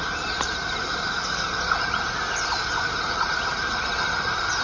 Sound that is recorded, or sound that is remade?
remade